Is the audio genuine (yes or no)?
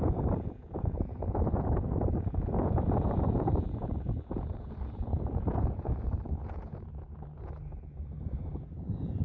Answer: no